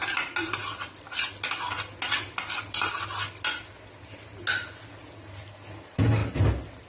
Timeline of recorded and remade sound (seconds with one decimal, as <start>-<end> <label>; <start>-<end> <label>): 0.0-6.9 recorded